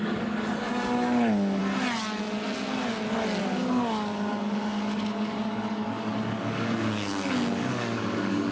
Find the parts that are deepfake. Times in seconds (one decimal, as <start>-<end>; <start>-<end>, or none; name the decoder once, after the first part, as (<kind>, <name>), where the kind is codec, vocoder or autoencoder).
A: 0.0-1.6 (codec, DAC); 3.4-8.5